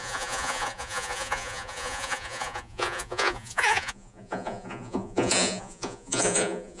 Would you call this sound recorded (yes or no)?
no